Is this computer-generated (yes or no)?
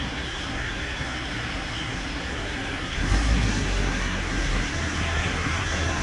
yes